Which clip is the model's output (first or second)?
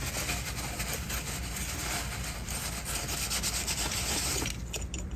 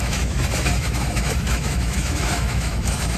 second